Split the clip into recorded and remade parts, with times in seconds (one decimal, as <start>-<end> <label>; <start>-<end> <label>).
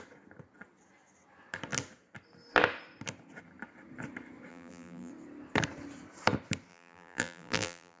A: 0.0-4.5 recorded; 4.5-5.1 remade; 5.1-6.7 recorded; 6.7-8.0 remade